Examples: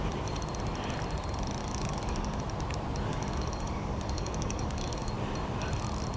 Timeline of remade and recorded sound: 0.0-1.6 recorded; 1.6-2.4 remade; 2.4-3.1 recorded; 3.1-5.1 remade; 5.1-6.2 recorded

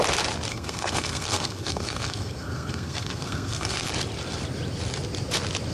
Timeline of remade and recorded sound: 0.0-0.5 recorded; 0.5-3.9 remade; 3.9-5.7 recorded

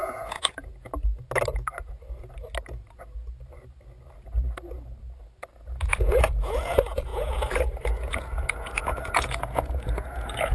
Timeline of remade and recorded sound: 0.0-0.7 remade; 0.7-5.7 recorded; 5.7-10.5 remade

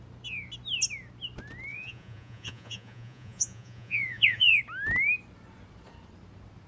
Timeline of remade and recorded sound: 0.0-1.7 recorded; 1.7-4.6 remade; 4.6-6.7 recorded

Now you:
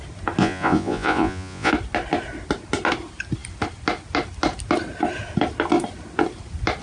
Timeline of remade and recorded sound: 0.0-0.4 recorded; 0.4-1.7 remade; 1.7-6.8 recorded